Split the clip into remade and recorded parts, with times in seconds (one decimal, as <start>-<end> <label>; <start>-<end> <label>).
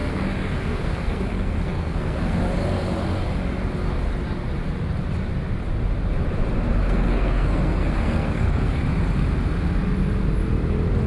0.0-2.4 remade; 2.4-6.8 recorded; 6.8-8.7 remade; 8.7-11.1 recorded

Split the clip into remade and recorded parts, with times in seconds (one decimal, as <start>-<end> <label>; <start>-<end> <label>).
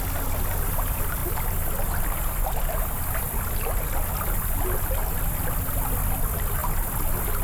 0.0-7.4 recorded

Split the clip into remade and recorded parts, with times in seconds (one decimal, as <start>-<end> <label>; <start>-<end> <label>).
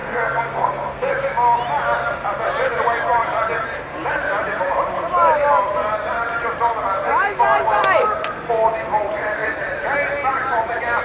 0.0-1.1 remade; 1.1-8.0 recorded; 8.0-8.5 remade; 8.5-11.0 recorded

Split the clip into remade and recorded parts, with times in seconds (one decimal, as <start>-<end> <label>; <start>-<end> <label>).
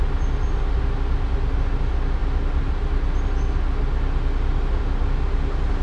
0.0-5.8 recorded